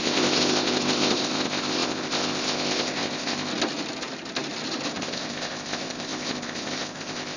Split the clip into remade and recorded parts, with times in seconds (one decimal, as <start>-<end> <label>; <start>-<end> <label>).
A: 0.0-3.5 remade; 3.5-4.9 recorded; 4.9-7.4 remade